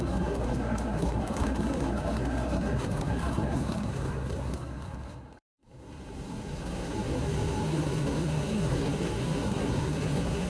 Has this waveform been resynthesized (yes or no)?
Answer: yes